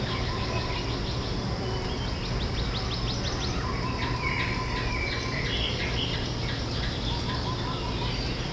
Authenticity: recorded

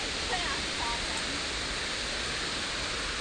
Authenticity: recorded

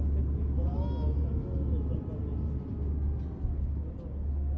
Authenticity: recorded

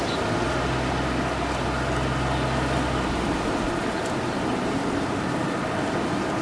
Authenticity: recorded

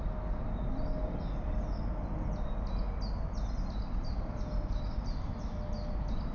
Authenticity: recorded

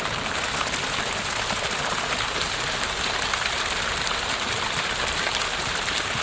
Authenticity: recorded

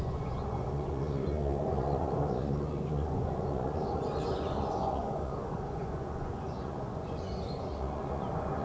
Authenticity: remade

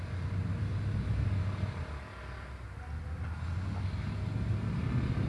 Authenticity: recorded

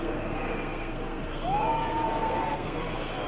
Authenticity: remade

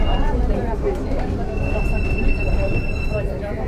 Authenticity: recorded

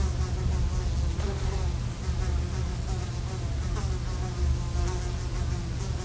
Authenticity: recorded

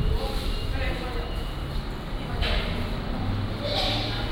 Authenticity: recorded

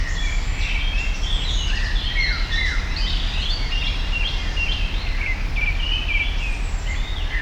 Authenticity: recorded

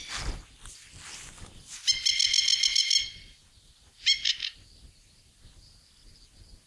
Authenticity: recorded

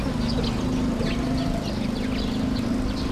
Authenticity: recorded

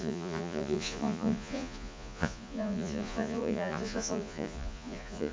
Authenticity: remade